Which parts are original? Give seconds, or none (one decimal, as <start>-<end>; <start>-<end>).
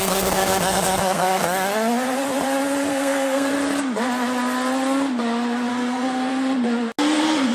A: 1.7-2.9; 3.5-5.7; 6.3-7.5